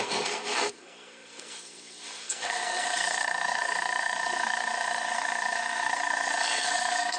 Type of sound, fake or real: fake